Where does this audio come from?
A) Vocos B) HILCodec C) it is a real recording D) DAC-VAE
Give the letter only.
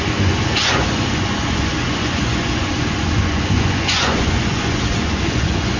A